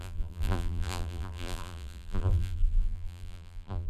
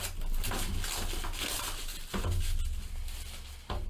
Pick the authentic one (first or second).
second